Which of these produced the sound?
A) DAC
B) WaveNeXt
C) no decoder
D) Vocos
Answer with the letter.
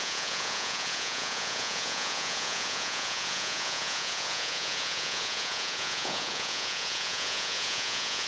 D